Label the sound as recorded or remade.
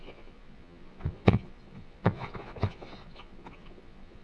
remade